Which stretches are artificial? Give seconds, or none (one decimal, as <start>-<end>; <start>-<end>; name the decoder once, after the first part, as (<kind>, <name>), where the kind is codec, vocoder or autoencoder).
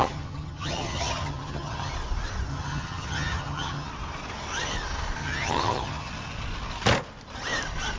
0.0-1.9 (vocoder, HiFi-GAN); 2.5-3.9; 5.2-6.1